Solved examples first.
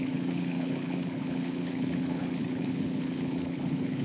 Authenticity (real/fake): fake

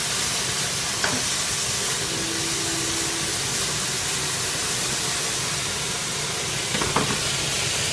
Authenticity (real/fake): real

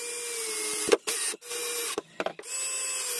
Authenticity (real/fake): real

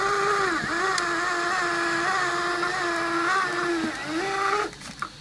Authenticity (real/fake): real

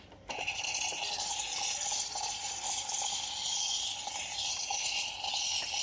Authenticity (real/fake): real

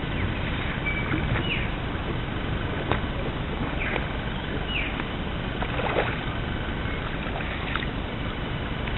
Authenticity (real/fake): real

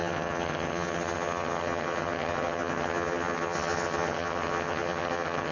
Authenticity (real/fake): fake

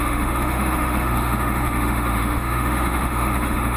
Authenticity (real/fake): fake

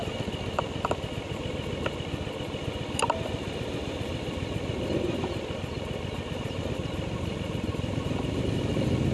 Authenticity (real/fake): real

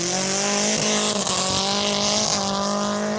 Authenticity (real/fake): real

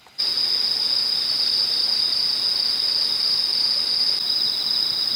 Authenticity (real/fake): real